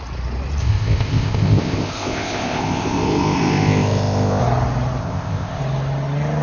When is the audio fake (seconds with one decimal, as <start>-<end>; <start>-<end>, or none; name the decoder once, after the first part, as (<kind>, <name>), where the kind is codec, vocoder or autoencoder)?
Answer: 0.6-4.4 (codec, ZipCodec); 5.0-5.6